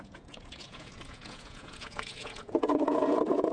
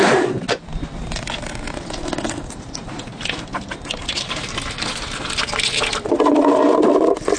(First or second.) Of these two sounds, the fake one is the first